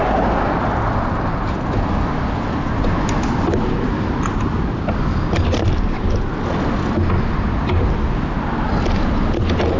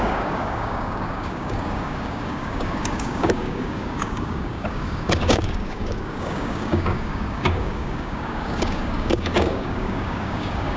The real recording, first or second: first